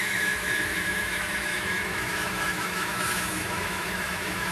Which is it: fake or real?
fake